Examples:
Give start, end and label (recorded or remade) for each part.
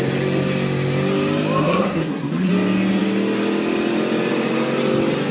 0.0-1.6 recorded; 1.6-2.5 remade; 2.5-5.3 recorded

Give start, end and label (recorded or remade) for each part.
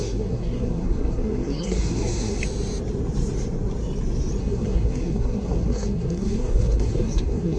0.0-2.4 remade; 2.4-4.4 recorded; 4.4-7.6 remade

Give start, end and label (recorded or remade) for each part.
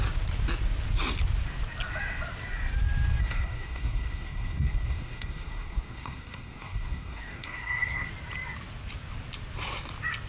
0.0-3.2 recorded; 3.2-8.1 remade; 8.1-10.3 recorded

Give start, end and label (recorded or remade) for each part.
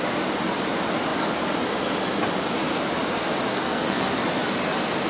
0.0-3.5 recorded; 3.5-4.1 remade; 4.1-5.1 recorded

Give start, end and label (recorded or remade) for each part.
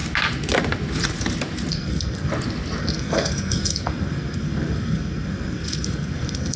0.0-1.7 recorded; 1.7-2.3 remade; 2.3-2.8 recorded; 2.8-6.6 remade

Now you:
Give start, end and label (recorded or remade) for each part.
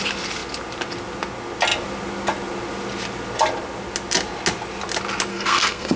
0.0-5.3 recorded; 5.3-6.0 remade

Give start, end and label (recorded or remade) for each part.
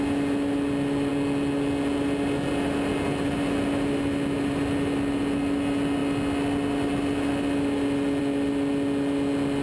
0.0-9.6 recorded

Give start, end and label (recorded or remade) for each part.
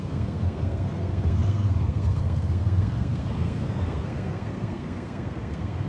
0.0-5.9 remade